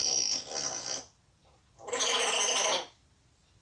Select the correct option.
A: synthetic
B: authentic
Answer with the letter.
B